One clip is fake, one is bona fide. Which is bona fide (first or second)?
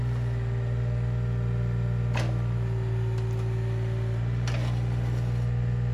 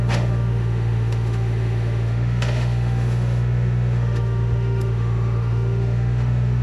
first